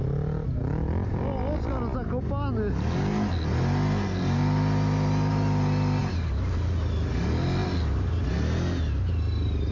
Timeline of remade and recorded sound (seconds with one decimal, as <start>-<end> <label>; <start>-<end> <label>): 0.0-6.0 recorded; 6.0-6.9 remade; 6.9-9.7 recorded